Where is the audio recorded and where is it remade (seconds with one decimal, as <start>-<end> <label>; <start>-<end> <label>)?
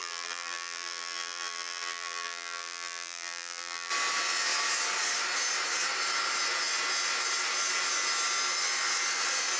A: 0.0-3.9 remade; 3.9-9.6 recorded